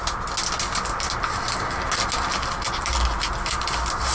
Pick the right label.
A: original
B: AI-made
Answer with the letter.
A